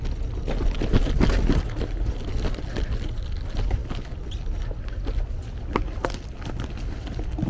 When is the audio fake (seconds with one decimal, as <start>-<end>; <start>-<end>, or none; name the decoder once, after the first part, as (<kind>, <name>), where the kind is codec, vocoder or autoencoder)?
none